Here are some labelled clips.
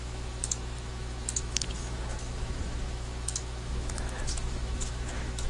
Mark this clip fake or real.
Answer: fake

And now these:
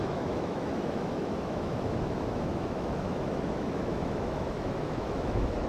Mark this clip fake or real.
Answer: fake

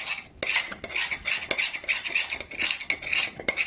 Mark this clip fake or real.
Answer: real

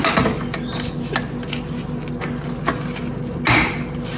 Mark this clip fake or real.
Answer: real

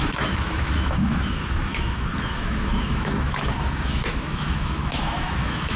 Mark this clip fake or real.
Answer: fake